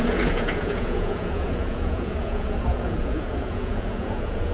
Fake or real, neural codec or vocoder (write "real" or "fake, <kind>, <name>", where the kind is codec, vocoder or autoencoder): fake, vocoder, Vocos